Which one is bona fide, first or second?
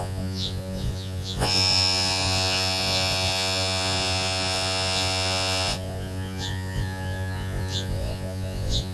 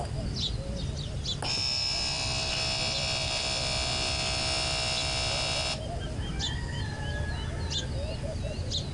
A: second